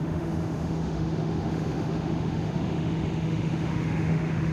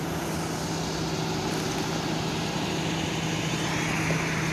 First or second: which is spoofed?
first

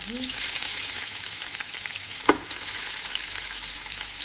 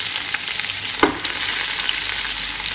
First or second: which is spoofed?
first